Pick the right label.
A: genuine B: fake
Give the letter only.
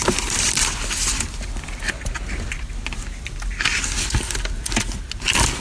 A